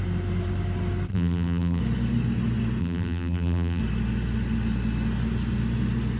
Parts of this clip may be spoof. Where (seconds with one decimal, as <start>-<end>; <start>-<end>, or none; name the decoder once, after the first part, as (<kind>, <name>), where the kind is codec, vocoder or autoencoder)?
1.1-1.8 (vocoder, BigVGAN v2); 2.8-3.8